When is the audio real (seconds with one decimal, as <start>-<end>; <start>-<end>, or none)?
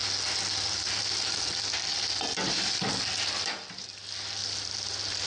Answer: 0.0-5.3